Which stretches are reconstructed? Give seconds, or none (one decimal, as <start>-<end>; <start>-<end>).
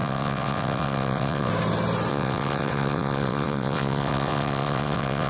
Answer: 0.0-1.5; 2.1-5.3